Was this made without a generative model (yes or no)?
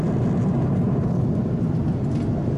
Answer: yes